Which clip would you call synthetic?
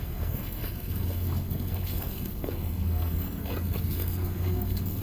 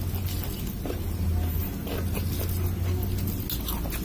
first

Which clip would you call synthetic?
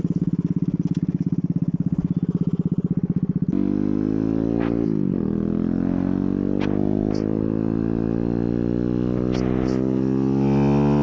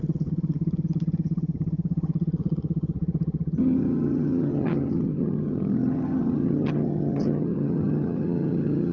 second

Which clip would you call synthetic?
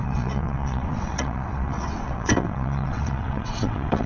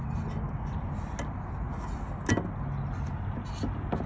first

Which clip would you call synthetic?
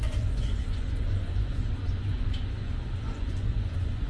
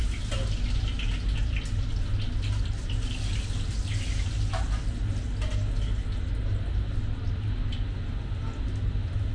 first